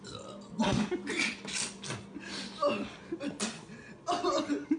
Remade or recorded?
recorded